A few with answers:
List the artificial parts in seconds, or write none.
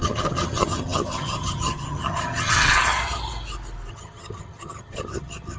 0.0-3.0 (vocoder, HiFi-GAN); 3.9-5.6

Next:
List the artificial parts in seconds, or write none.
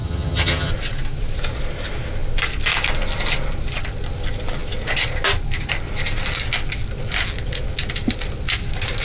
0.0-0.7 (vocoder, HiFi-GAN)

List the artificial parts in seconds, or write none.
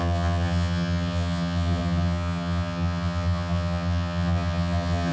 0.0-5.1 (vocoder, HiFi-GAN)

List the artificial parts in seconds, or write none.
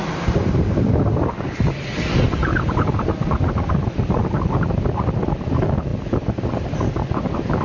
none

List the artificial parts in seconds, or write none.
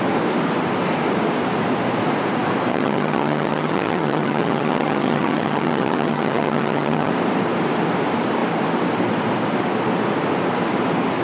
2.7-7.1 (vocoder, HiFi-GAN)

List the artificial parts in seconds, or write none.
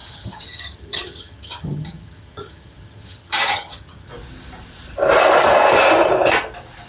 0.0-4.1 (vocoder, HiFi-GAN)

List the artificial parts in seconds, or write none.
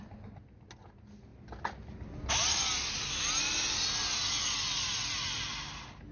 none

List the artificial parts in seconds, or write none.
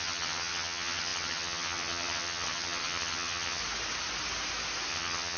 0.0-3.6 (vocoder, HiFi-GAN); 4.9-5.4